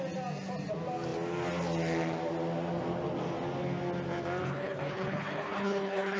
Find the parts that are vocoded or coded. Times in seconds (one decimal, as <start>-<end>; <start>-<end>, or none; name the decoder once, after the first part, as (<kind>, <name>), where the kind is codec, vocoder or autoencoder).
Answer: 4.4-6.2 (codec, HILCodec)